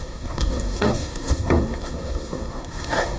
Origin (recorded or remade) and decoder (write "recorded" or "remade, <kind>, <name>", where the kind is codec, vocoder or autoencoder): remade, codec, SNAC